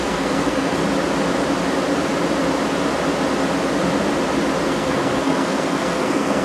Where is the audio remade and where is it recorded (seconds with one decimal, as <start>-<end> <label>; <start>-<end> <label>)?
0.0-0.8 remade; 0.8-4.6 recorded; 4.6-6.4 remade